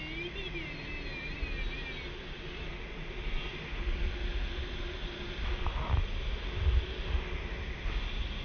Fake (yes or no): no